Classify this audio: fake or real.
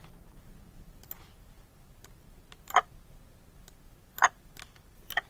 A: real